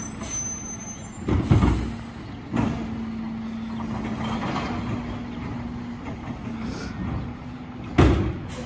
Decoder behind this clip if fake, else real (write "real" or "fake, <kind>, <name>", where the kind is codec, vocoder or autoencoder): real